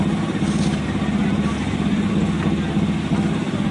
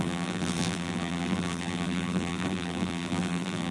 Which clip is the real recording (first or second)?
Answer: first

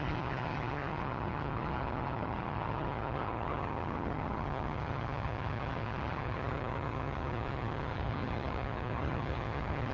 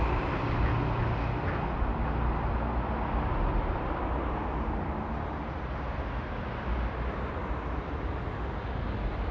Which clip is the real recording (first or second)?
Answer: second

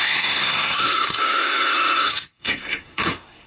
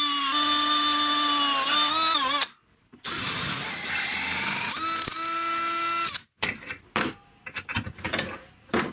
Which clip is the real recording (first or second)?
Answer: second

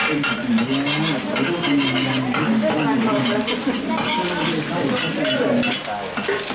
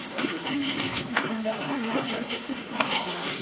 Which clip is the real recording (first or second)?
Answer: first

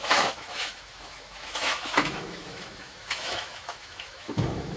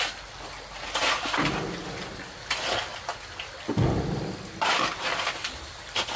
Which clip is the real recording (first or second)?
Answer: second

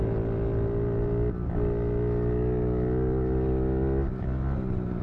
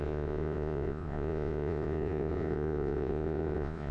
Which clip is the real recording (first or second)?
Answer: first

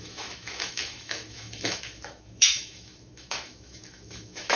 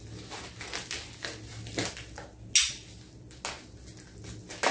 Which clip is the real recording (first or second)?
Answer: second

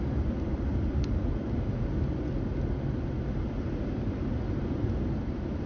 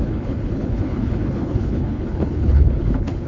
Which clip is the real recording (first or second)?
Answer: first